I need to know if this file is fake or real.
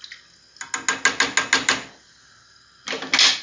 real